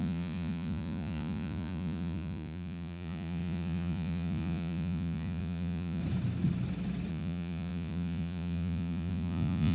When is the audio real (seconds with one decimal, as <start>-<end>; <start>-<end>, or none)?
6.0-7.1

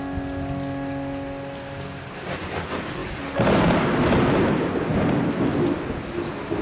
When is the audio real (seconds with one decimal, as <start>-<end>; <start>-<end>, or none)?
0.0-6.6

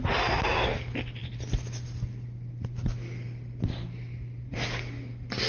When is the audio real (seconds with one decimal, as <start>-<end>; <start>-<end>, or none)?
0.0-5.5

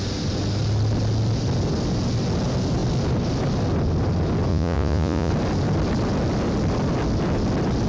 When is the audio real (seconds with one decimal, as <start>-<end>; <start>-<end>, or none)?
0.0-4.5; 5.3-7.9

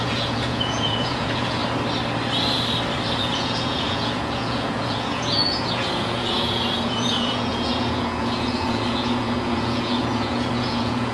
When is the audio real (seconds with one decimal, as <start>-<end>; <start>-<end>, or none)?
1.6-3.2

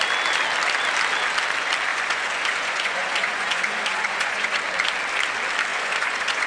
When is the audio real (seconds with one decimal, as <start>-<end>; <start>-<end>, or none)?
0.0-1.9; 4.6-5.7